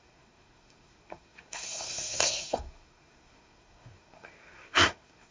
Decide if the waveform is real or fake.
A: fake